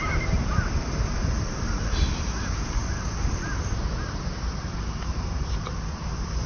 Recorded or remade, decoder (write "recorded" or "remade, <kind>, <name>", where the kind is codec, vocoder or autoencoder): remade, vocoder, BigVGAN v2